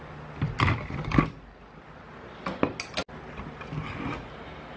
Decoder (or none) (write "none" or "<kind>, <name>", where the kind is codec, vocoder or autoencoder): none